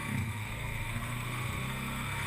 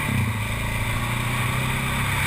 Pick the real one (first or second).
second